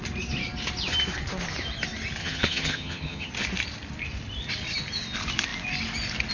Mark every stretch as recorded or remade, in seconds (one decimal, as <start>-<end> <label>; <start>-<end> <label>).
0.0-2.2 recorded; 2.2-3.3 remade; 3.3-6.3 recorded